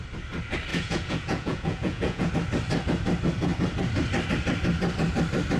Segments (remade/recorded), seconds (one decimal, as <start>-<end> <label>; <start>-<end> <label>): 0.0-0.7 recorded; 0.7-2.3 remade; 2.3-5.6 recorded